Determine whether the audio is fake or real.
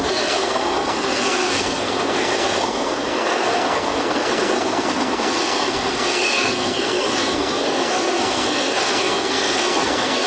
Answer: fake